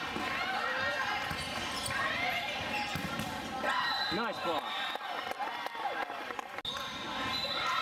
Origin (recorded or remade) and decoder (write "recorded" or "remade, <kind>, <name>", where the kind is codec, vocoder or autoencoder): recorded